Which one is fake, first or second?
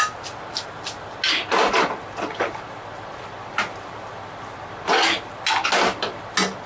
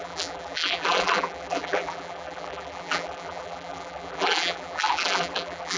second